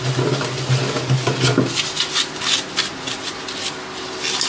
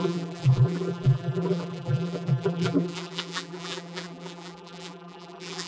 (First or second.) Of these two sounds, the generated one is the second